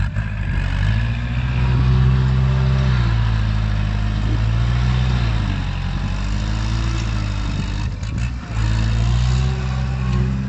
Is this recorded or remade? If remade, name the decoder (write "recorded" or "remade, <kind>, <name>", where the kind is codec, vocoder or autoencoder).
recorded